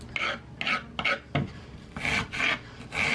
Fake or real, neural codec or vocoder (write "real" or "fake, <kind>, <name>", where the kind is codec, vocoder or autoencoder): real